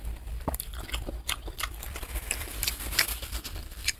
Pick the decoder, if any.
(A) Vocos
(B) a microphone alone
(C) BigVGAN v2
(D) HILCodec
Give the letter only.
C